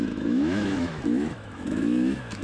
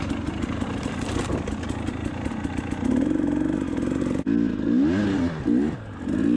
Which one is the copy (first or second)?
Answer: first